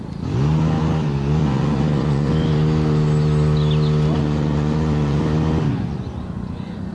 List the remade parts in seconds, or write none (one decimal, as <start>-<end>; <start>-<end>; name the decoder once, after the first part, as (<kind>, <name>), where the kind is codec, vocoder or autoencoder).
1.4-2.3 (vocoder, Vocos); 4.2-5.2; 5.7-6.9